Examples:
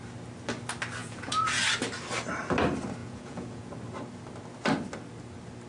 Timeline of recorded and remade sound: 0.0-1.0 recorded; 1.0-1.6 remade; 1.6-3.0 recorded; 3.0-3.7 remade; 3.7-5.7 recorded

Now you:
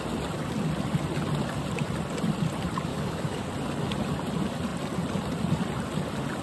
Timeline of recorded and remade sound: 0.0-2.9 recorded; 2.9-3.5 remade; 3.5-6.4 recorded